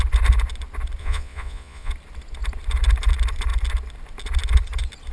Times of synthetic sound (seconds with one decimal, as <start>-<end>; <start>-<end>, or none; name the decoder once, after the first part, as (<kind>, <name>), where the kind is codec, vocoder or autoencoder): 1.0-1.9 (vocoder, Vocos)